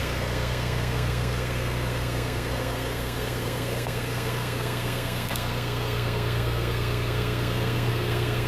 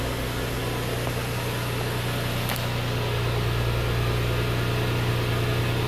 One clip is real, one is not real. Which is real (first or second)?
second